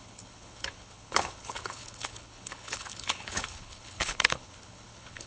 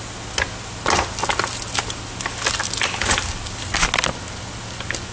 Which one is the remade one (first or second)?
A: first